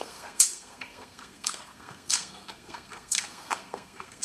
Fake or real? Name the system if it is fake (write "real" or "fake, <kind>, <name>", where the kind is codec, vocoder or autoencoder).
fake, codec, SNAC